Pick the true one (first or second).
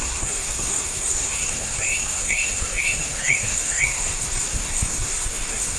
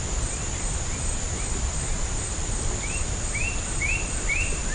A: second